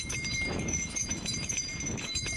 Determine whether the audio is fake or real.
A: fake